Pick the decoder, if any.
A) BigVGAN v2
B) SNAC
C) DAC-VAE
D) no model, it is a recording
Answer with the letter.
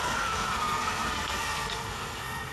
B